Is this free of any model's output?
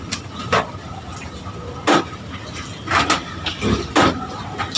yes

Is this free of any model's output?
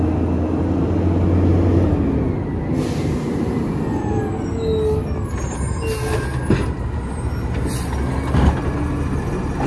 yes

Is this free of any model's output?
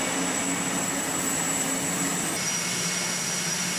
yes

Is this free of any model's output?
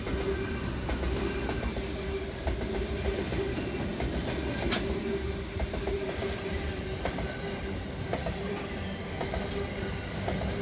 yes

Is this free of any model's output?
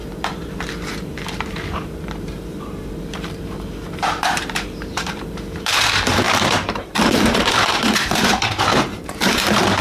no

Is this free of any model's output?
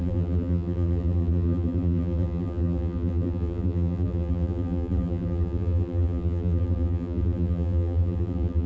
no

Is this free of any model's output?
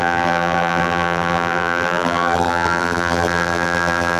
no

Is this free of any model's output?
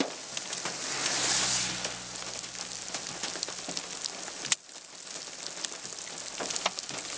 yes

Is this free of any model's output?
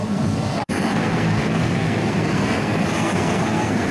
no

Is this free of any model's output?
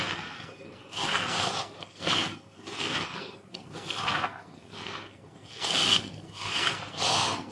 no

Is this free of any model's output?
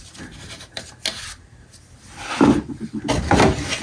yes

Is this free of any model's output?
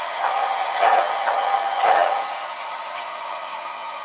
no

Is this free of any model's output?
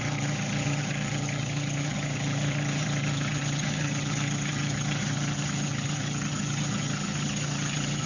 no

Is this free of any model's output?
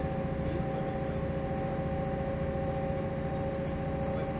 yes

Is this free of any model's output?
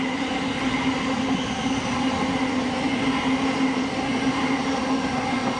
yes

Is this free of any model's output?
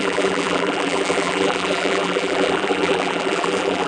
no